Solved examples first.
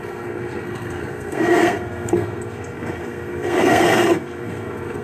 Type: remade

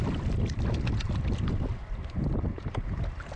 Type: recorded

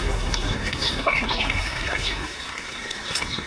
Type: remade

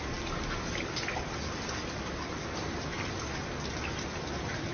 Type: recorded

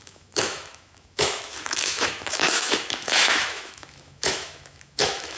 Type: remade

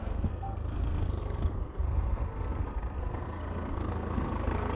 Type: remade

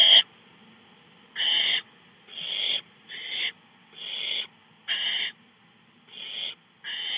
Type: recorded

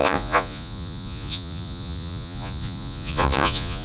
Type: remade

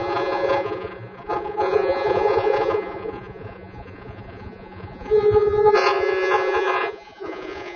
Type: remade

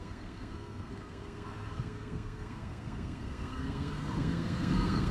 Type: remade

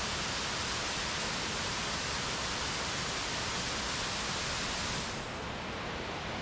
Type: recorded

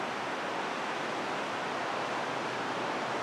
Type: recorded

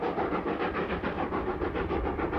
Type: recorded